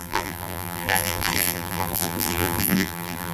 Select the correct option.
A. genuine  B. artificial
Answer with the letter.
B